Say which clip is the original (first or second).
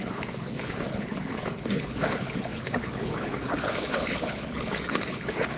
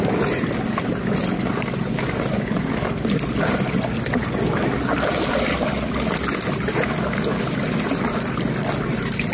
second